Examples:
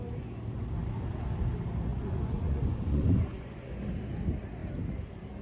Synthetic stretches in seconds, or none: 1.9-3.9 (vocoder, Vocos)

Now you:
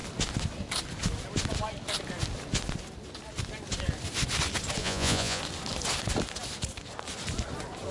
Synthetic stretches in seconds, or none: 4.8-5.4 (vocoder, Vocos)

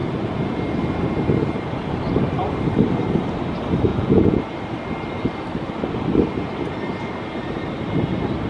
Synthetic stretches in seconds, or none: 3.9-4.4 (vocoder, Vocos)

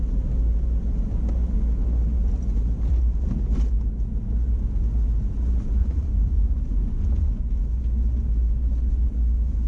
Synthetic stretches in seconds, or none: 5.8-7.4 (vocoder, Vocos)